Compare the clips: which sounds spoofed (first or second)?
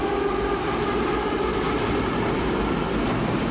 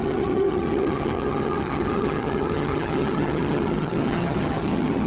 second